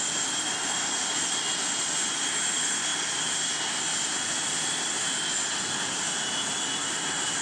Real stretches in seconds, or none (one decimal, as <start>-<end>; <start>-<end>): 0.0-7.4

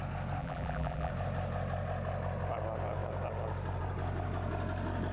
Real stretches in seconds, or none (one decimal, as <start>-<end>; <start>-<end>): 0.0-0.4; 1.1-5.1

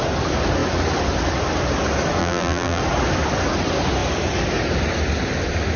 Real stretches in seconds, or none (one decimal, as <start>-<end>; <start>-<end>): 0.0-2.2; 2.8-5.8

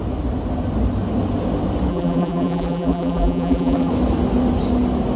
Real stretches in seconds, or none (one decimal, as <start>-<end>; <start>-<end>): 0.0-1.9; 3.9-5.2

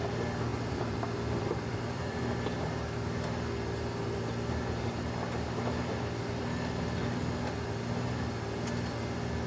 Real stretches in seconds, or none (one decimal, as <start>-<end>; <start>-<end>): 0.0-0.5; 2.2-9.5

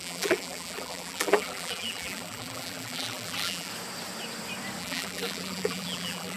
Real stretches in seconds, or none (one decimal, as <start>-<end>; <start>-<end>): 3.7-4.8